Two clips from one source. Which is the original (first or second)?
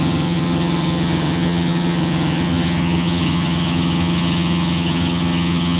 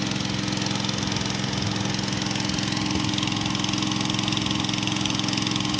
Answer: second